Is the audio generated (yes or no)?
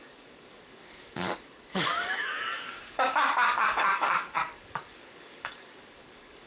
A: yes